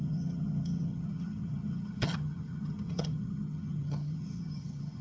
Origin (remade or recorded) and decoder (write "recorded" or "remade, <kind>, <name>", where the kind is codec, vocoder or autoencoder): remade, vocoder, HiFi-GAN